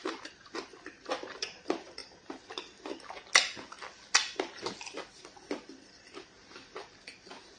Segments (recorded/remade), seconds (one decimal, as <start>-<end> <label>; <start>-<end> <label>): 0.0-7.6 recorded